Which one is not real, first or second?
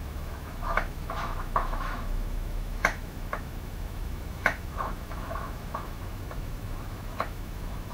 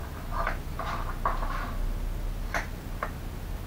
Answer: first